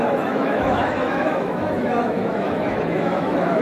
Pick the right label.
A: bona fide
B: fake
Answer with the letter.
B